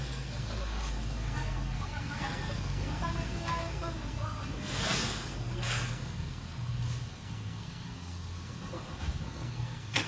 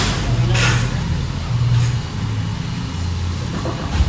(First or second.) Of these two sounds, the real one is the second